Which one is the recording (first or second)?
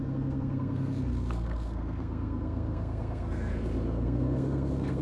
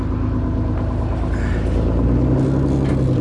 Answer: second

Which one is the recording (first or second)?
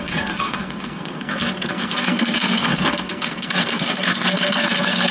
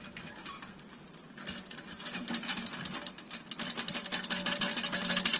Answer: second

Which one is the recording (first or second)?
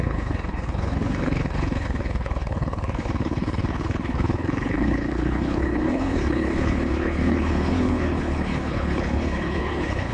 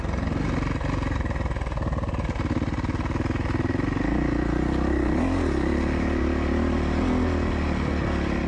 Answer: second